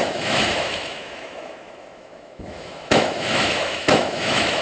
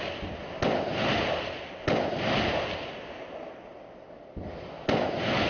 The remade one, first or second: first